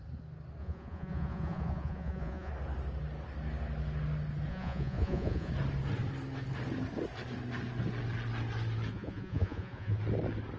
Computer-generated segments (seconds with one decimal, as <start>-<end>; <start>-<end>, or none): 0.6-2.5; 4.5-5.5; 8.9-10.0